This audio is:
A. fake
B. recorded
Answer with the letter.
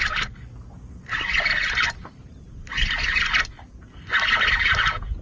B